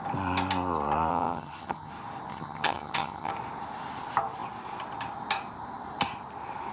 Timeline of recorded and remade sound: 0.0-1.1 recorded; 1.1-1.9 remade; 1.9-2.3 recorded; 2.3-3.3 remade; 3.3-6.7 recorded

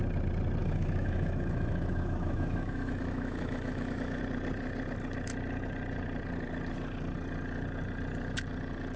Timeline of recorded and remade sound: 0.0-0.6 recorded; 0.6-4.2 remade; 4.2-9.0 recorded

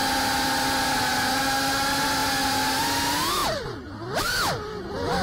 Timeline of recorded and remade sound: 0.0-5.2 recorded

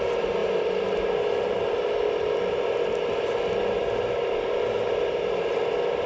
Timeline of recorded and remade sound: 0.0-6.1 recorded

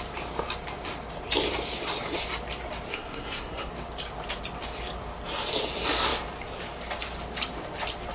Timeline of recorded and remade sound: 0.0-2.9 recorded; 2.9-3.7 remade; 3.7-8.1 recorded

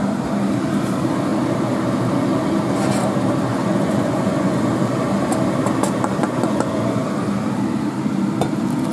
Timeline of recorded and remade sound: 0.0-3.5 recorded; 3.5-4.7 remade; 4.7-6.2 recorded; 6.2-7.0 remade; 7.0-8.9 recorded